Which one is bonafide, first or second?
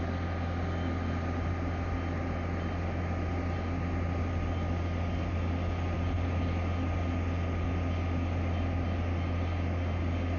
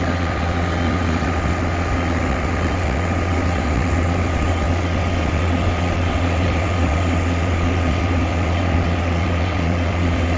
first